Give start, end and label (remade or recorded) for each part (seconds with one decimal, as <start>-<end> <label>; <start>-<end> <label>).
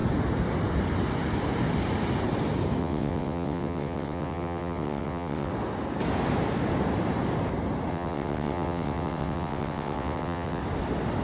0.0-2.8 recorded; 2.8-5.5 remade; 5.5-7.9 recorded; 7.9-10.6 remade; 10.6-11.2 recorded